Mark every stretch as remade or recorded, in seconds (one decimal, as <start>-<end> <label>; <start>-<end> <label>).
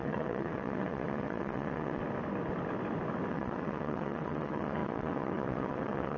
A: 0.0-2.0 remade; 2.0-3.3 recorded; 3.3-6.2 remade